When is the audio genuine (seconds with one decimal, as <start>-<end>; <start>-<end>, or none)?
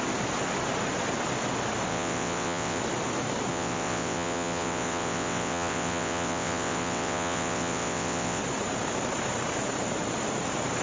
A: 0.0-1.9; 2.8-3.5; 8.4-10.8